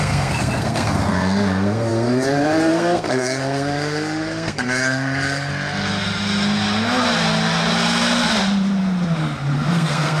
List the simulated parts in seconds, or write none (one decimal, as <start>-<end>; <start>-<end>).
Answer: 0.0-5.5; 9.7-10.2